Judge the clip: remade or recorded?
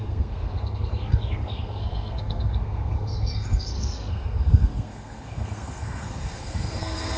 remade